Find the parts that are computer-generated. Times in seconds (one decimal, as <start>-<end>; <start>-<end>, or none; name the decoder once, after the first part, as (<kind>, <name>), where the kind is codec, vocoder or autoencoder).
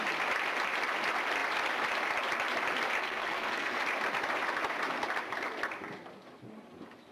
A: 3.0-3.8 (codec, SNAC)